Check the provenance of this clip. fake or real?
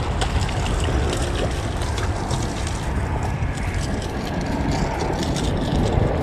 real